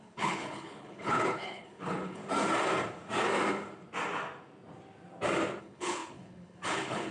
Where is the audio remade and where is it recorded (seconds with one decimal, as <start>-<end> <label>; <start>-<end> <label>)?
0.0-2.2 remade; 2.2-5.6 recorded; 5.6-7.1 remade